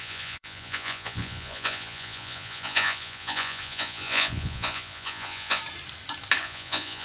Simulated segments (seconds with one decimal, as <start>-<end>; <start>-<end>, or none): 0.0-5.6; 6.4-7.0